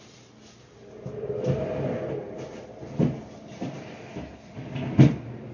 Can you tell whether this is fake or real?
real